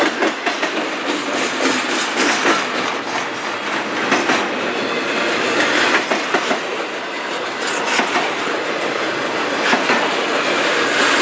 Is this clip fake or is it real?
real